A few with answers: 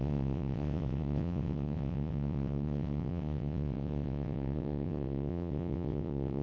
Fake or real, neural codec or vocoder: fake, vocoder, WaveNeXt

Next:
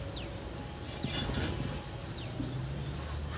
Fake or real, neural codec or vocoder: real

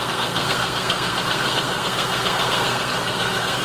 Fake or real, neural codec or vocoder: fake, codec, SNAC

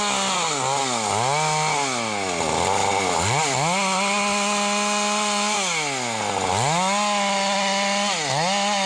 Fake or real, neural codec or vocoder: real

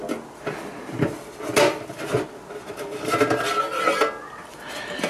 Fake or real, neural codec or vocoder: real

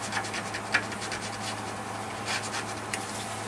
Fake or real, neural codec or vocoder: real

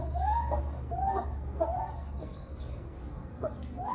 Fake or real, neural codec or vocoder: fake, codec, SNAC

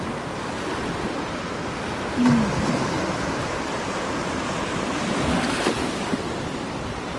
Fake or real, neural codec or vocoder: real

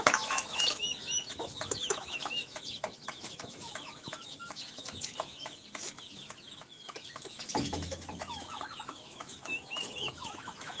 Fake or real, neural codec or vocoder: fake, autoencoder, DAC-VAE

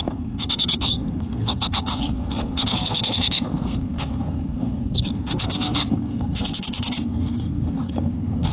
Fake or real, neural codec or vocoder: fake, codec, SNAC